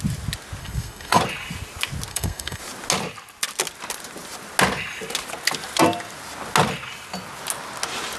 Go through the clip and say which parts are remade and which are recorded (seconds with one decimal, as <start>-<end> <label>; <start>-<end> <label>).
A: 0.0-0.6 recorded; 0.6-1.2 remade; 1.2-2.1 recorded; 2.1-2.6 remade; 2.6-8.2 recorded